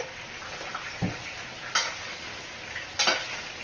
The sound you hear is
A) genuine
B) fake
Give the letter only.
A